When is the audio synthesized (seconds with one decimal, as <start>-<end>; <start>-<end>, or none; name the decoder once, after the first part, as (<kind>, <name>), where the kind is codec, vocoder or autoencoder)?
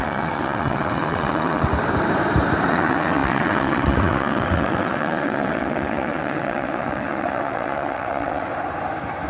0.0-1.7 (vocoder, WaveNeXt); 2.7-8.5